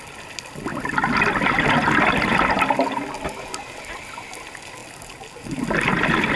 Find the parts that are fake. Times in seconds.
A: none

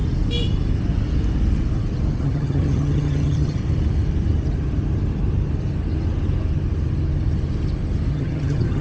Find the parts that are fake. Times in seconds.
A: 2.2-3.6 (vocoder, HiFi-GAN); 8.1-8.8